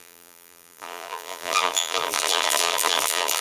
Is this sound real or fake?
fake